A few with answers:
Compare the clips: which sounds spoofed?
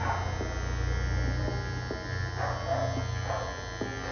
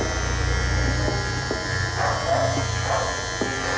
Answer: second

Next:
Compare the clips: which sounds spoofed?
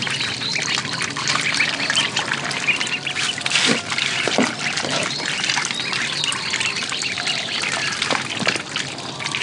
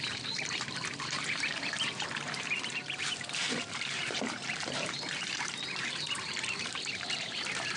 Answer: second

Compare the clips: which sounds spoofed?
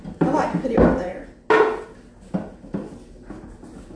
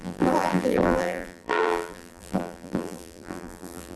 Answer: second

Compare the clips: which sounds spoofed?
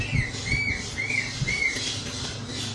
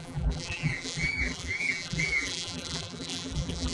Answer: second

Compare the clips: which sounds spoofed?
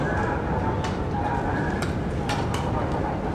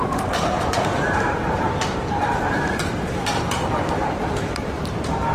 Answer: second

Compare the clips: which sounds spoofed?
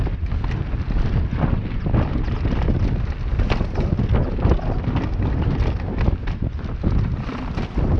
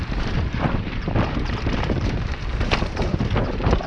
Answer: second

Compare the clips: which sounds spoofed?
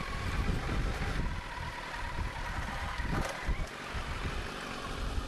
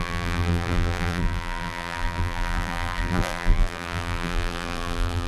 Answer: second